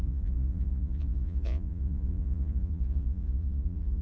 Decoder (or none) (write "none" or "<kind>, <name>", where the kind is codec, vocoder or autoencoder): vocoder, Vocos